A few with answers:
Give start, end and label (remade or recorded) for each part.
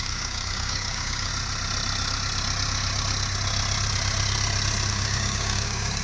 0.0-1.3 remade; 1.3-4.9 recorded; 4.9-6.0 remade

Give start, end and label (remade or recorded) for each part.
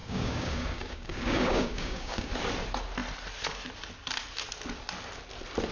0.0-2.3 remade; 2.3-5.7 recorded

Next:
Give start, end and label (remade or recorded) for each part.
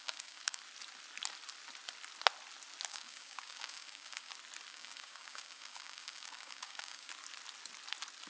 0.0-0.6 remade; 0.6-2.9 recorded; 2.9-4.3 remade; 4.3-4.7 recorded; 4.7-7.1 remade; 7.1-8.3 recorded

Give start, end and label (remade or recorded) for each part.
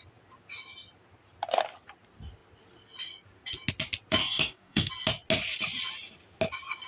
0.0-4.2 recorded; 4.2-4.9 remade; 4.9-6.9 recorded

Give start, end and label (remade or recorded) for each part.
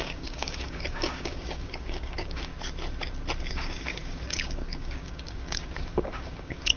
0.0-2.5 remade; 2.5-3.5 recorded; 3.5-6.8 remade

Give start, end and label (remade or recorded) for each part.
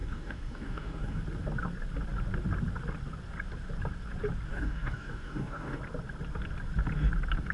0.0-1.2 remade; 1.2-4.5 recorded; 4.5-5.8 remade; 5.8-7.5 recorded